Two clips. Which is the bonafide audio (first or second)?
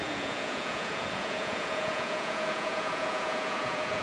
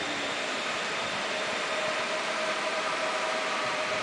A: second